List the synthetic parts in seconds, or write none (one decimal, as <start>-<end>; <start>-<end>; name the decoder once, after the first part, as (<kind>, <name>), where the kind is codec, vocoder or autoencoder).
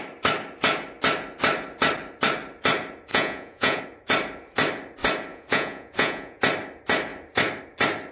3.1-3.8 (vocoder, Vocos); 5.3-6.4